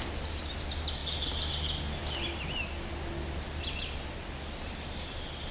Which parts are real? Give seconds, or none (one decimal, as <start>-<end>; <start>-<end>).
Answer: 0.0-5.5